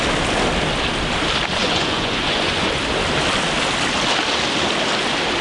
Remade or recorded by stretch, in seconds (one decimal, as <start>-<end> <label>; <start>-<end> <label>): 0.0-1.6 recorded; 1.6-2.7 remade; 2.7-5.4 recorded